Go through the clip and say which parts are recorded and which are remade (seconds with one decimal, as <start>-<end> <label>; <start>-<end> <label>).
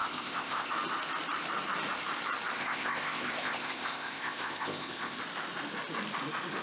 0.0-0.7 remade; 0.7-2.6 recorded; 2.6-5.2 remade; 5.2-6.6 recorded